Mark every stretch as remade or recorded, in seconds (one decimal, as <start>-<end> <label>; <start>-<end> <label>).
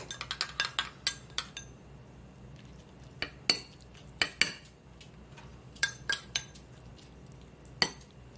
0.0-5.5 recorded; 5.5-6.9 remade; 6.9-8.4 recorded